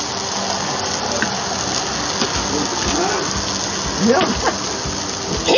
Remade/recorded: recorded